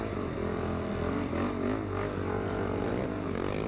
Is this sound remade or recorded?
recorded